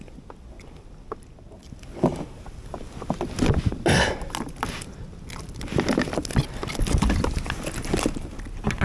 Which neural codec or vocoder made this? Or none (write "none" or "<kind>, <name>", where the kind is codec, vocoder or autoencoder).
none